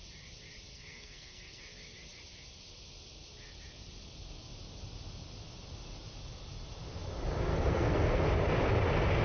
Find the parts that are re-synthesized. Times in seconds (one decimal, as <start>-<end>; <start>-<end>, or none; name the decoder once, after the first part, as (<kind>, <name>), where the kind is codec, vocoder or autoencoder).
0.7-1.6 (codec, SNAC); 7.5-8.2